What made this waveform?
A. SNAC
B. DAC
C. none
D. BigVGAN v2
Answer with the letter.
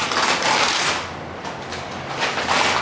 C